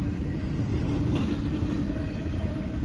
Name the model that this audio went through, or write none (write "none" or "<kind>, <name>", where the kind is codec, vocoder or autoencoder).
vocoder, BigVGAN v2